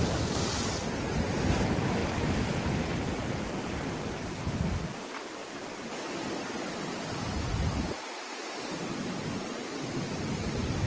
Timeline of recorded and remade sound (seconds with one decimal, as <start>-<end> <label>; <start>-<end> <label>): 0.0-10.9 recorded